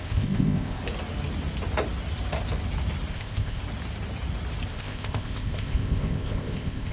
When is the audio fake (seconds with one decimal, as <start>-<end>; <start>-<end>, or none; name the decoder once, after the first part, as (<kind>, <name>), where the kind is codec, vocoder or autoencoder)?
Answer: 0.0-0.8 (codec, ZipCodec); 3.1-3.6; 4.7-6.9